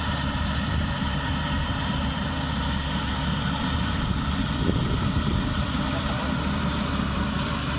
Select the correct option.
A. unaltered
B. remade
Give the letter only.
B